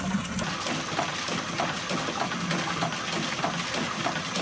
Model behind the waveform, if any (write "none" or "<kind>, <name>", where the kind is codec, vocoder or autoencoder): none